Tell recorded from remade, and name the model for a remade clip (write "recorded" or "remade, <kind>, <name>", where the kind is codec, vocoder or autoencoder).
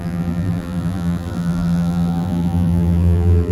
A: remade, vocoder, BigVGAN v2